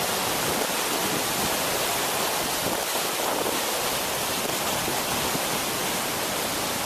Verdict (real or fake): real